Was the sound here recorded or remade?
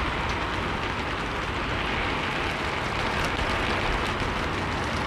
recorded